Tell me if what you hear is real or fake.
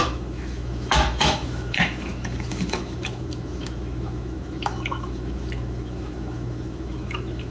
fake